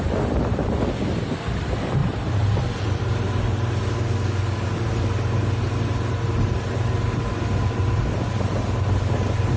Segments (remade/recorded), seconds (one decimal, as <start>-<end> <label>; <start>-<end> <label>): 0.0-2.0 recorded; 2.0-3.0 remade; 3.0-9.6 recorded